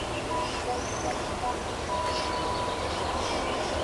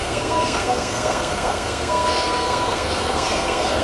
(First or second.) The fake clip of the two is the second